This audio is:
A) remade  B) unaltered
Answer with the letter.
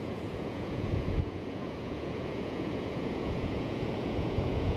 A